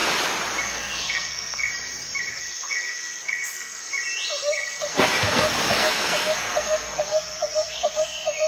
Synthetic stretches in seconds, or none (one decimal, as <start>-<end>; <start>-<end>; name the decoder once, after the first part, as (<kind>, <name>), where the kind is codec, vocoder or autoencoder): 0.6-1.7 (codec, SNAC); 2.3-3.9; 4.4-8.5